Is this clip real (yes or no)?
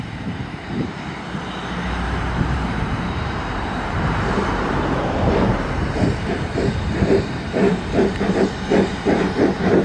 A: no